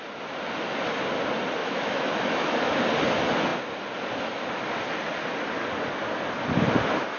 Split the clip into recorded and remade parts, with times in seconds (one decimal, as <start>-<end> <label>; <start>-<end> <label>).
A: 0.0-1.6 recorded; 1.6-2.7 remade; 2.7-7.2 recorded

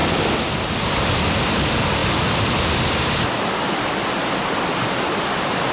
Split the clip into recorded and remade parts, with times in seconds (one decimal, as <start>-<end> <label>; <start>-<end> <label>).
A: 0.0-5.7 recorded

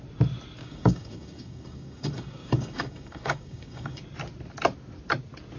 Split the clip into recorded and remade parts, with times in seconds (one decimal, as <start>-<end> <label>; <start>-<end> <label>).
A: 0.0-0.6 recorded; 0.6-4.0 remade; 4.0-5.6 recorded

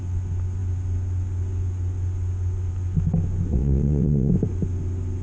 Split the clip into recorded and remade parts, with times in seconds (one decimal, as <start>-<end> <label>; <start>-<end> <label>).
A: 0.0-3.5 recorded; 3.5-4.3 remade; 4.3-5.2 recorded

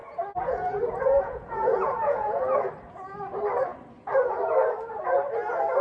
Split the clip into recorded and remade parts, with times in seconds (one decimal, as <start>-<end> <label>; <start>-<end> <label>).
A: 0.0-2.4 remade; 2.4-5.8 recorded